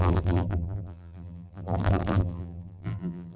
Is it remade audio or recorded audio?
remade